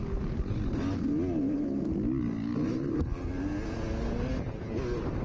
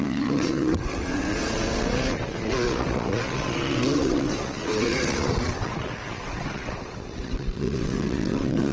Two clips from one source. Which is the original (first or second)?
first